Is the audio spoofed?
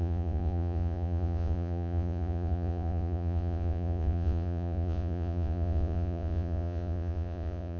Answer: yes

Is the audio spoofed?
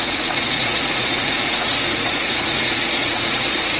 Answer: yes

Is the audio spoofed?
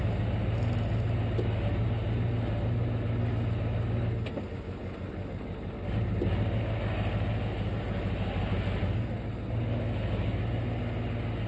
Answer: no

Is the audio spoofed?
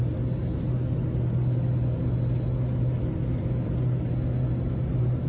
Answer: no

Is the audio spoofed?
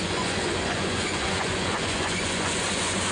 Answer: yes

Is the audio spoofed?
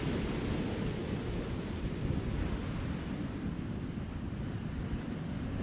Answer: no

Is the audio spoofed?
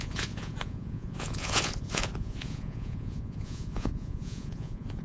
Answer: yes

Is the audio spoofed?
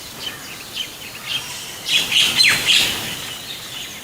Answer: no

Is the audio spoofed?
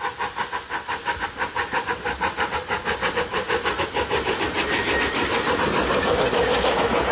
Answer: no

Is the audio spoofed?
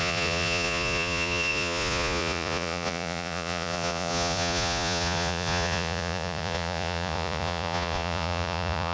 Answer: yes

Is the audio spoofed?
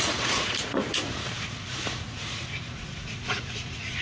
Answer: yes